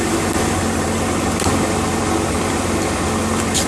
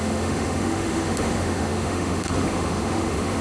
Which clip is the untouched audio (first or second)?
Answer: first